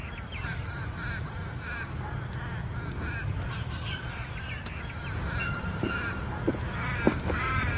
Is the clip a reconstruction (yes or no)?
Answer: no